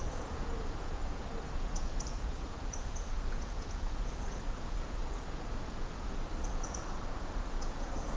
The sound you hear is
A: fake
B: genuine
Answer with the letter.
A